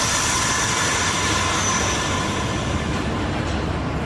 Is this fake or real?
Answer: real